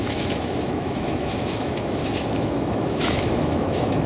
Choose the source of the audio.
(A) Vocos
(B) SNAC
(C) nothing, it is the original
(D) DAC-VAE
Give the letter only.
D